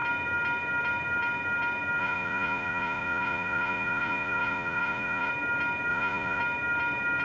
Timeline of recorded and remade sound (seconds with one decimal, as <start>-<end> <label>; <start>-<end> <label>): 0.0-2.0 recorded; 2.0-5.3 remade; 5.3-5.9 recorded; 5.9-6.4 remade; 6.4-7.2 recorded